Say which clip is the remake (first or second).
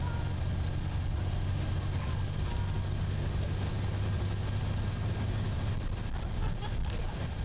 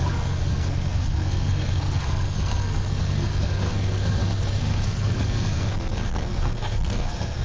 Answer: second